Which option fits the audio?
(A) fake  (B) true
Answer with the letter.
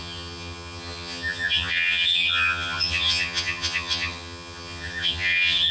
A